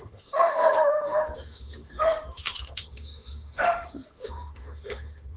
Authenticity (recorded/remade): remade